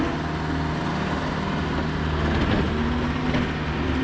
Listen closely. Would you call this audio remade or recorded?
recorded